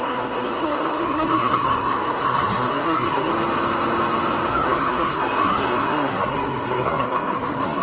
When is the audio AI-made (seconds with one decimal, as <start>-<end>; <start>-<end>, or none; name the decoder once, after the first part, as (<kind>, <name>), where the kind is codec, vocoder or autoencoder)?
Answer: 0.0-3.3 (codec, SNAC); 4.5-7.8

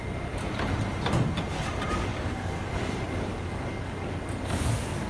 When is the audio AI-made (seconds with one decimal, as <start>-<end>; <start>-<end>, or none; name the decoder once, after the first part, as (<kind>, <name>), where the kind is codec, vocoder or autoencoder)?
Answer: 2.1-2.7 (codec, DAC); 3.3-4.1